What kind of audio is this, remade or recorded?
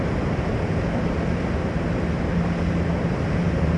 recorded